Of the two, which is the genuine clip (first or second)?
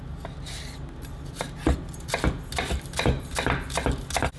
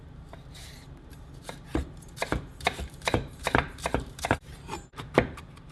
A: first